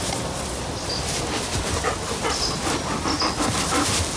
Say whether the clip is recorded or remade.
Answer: recorded